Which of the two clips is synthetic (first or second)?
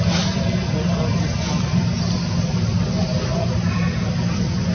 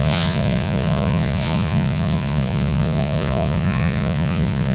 second